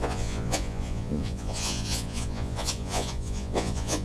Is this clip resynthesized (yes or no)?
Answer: yes